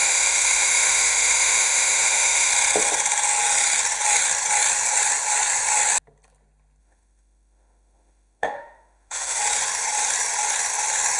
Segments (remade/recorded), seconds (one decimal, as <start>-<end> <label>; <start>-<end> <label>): 0.0-2.5 remade; 2.5-6.8 recorded; 6.8-9.4 remade; 9.4-11.2 recorded